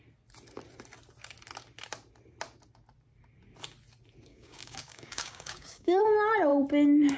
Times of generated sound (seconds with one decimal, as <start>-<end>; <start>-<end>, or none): 4.3-6.0